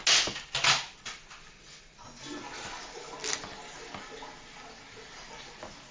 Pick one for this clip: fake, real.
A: real